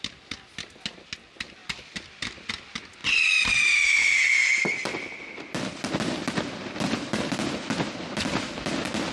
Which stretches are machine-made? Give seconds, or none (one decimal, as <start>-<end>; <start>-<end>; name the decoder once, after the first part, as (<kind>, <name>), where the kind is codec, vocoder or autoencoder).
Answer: none

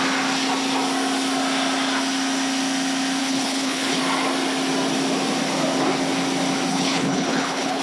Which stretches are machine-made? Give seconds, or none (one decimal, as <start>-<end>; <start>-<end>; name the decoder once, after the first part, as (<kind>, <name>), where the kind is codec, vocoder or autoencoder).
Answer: 3.2-4.0 (codec, HILCodec); 6.7-7.8

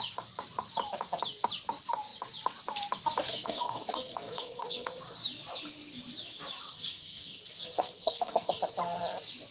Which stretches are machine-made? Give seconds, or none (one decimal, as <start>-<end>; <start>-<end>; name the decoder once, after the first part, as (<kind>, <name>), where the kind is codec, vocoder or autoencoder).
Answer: 3.3-5.0 (codec, SNAC); 6.7-8.6

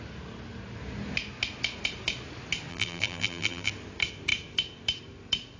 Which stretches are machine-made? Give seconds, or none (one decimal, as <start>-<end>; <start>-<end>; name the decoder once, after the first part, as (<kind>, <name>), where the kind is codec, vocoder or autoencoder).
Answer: 2.7-3.7 (vocoder, BigVGAN v2)

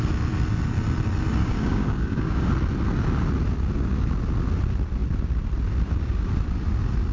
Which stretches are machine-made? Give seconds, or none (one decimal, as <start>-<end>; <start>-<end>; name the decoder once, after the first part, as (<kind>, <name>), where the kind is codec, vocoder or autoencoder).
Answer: 1.4-2.5 (codec, DAC)